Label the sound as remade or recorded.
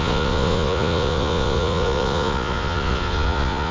remade